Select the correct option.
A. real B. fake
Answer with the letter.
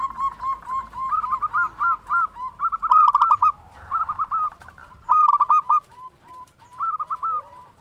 B